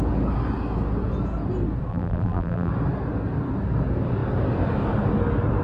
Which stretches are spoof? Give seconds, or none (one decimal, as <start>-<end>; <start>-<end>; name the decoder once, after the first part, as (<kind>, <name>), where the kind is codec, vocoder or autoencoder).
1.9-2.7 (vocoder, BigVGAN v2)